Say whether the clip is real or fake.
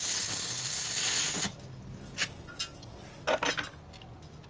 real